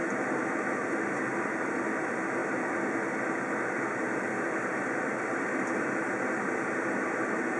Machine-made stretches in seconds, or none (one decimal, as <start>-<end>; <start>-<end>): none